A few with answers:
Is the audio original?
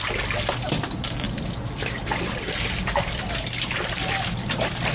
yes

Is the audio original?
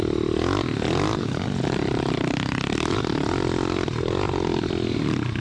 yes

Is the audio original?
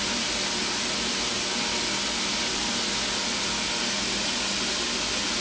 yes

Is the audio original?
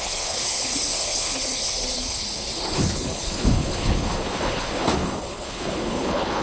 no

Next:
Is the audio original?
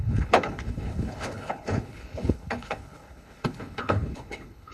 no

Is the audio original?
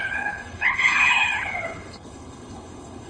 no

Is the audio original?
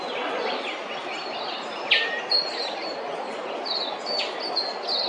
yes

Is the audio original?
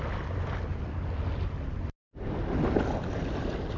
yes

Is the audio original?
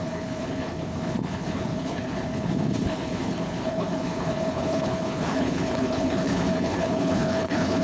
no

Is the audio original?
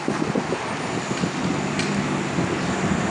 yes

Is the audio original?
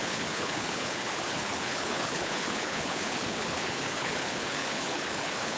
no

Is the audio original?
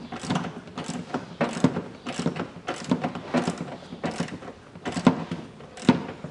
yes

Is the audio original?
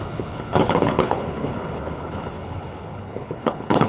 no